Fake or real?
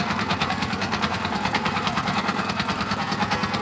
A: fake